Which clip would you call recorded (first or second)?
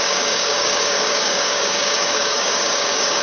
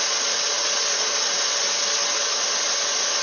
second